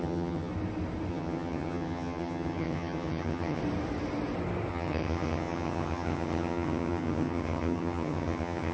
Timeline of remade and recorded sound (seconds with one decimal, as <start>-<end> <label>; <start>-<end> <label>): 0.0-0.5 remade; 0.5-1.1 recorded; 1.1-3.6 remade; 3.6-4.7 recorded; 4.7-8.7 remade